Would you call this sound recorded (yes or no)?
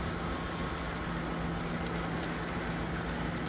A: yes